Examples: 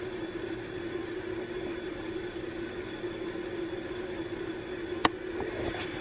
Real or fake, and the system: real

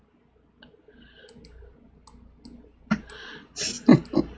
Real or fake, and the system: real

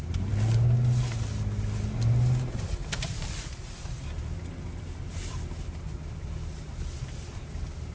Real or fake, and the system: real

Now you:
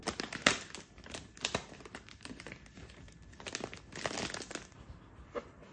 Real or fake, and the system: real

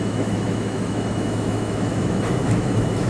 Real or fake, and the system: fake, autoencoder, DAC-VAE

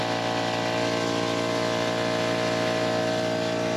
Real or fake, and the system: real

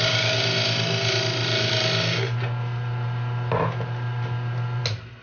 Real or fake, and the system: real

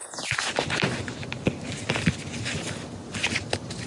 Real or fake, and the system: real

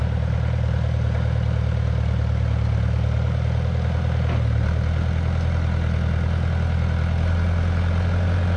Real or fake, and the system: real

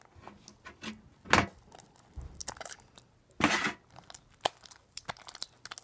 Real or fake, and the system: real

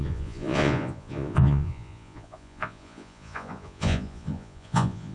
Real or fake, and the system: fake, vocoder, Vocos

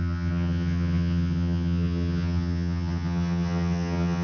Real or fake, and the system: fake, vocoder, HiFi-GAN